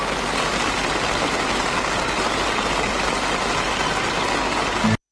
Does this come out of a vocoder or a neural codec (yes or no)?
no